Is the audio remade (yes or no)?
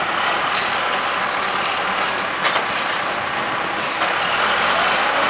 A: no